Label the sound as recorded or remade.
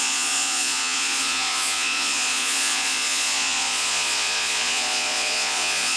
remade